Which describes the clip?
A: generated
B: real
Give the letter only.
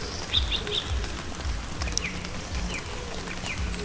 B